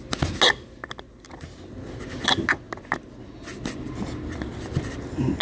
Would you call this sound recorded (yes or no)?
yes